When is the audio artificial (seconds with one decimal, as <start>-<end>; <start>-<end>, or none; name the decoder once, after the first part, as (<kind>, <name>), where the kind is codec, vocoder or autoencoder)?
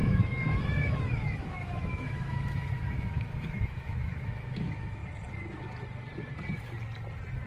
0.0-5.0 (autoencoder, DAC-VAE)